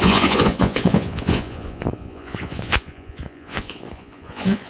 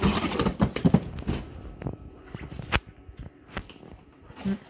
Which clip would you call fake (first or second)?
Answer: first